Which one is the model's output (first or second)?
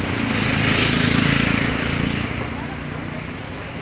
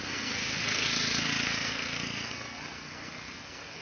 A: second